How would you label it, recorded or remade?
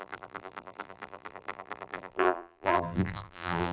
remade